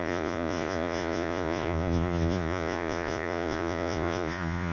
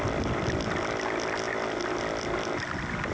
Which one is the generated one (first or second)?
first